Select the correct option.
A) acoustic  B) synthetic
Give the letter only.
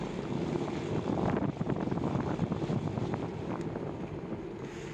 A